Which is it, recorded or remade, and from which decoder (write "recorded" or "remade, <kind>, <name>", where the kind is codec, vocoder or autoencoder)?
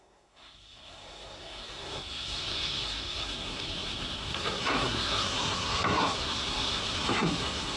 remade, codec, SNAC